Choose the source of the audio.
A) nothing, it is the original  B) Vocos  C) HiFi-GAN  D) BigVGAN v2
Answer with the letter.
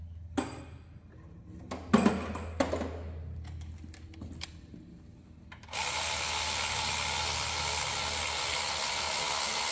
A